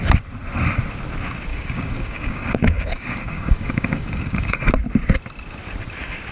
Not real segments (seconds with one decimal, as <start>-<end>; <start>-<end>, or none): 1.5-4.7